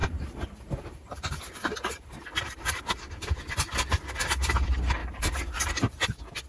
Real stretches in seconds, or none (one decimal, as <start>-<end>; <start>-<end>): 2.8-5.0; 5.7-6.5

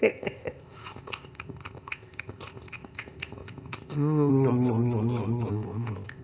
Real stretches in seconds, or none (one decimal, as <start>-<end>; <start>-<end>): 4.3-5.5

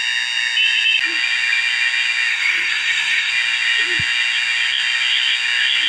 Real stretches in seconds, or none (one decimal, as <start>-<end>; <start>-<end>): 0.0-2.3; 3.3-5.9

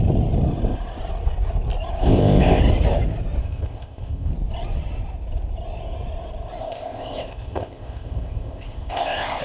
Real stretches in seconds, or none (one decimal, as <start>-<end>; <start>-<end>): 0.0-2.0; 2.6-3.4; 4.3-6.6

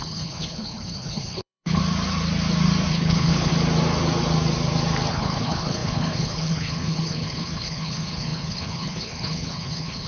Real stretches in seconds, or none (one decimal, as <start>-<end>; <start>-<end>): 1.8-2.9; 3.5-5.1

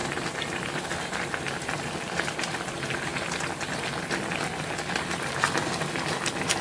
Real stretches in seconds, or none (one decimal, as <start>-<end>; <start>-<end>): 2.5-6.6

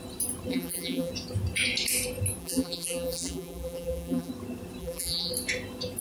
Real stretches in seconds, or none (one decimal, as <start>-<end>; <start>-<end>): 0.0-0.5; 1.1-2.4; 4.3-4.8; 5.3-6.0